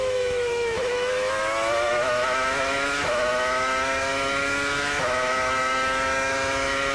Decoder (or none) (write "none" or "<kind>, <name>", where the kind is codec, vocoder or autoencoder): autoencoder, DAC-VAE